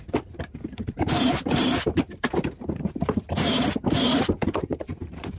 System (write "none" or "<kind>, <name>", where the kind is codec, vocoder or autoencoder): vocoder, BigVGAN v2